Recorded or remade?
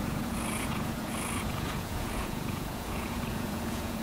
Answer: remade